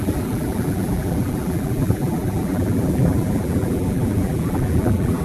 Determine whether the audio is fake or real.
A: fake